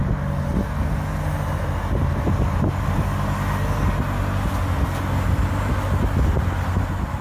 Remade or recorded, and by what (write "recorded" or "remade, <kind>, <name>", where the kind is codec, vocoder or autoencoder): recorded